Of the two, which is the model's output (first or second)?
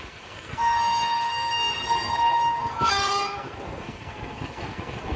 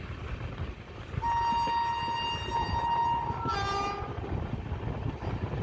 first